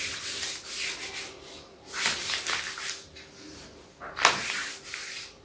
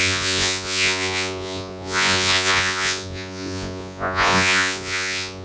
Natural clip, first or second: first